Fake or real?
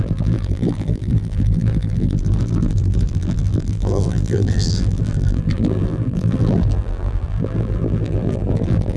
fake